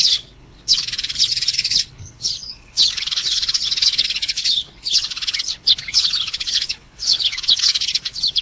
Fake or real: fake